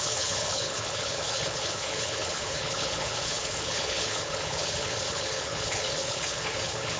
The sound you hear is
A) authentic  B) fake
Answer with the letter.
B